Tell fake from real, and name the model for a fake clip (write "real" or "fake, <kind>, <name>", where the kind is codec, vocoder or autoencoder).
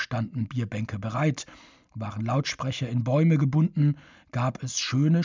real